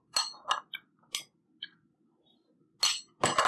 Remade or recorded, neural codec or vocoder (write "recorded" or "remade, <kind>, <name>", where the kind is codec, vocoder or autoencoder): recorded